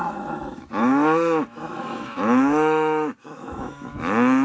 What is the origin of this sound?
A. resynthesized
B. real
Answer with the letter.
A